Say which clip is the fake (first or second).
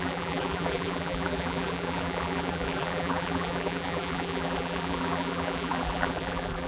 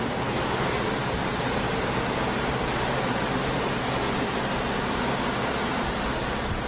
first